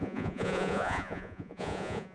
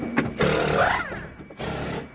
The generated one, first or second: first